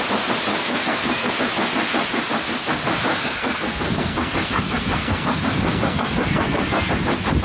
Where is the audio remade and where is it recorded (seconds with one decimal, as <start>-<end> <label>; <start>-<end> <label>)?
0.0-0.5 recorded; 0.5-1.3 remade; 1.3-3.1 recorded; 3.1-6.9 remade; 6.9-7.4 recorded